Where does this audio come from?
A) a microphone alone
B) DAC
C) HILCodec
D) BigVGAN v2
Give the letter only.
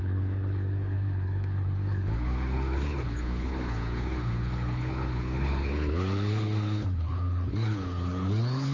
C